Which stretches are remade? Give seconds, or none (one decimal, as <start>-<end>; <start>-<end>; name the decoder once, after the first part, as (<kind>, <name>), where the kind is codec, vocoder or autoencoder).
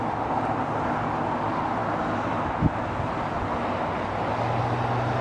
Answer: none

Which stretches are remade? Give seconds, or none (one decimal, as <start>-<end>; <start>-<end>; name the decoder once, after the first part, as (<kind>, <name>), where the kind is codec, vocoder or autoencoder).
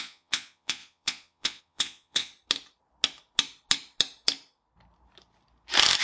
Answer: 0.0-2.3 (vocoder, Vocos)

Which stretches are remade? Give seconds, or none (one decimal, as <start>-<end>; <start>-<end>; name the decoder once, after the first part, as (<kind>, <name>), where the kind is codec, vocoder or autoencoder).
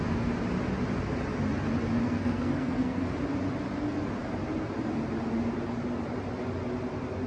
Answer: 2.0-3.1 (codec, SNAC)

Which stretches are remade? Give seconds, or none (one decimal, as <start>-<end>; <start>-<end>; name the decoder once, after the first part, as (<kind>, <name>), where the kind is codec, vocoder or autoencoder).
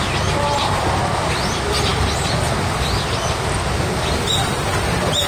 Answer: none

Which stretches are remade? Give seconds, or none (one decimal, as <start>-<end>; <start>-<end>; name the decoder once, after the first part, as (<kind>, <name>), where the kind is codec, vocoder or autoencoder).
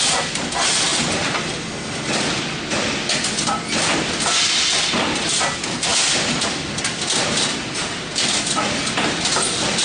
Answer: none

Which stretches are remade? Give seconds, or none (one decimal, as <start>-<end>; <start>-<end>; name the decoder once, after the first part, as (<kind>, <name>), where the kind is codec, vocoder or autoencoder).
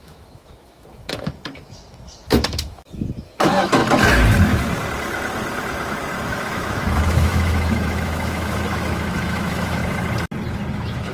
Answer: 0.0-3.8 (autoencoder, DAC-VAE); 6.3-9.8; 10.7-11.1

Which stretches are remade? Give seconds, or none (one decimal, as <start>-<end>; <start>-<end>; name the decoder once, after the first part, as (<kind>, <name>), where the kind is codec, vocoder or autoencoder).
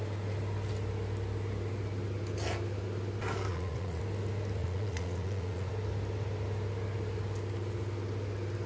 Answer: 3.5-4.0 (vocoder, Vocos); 4.6-5.7